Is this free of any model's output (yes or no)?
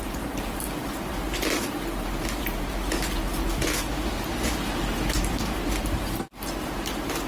no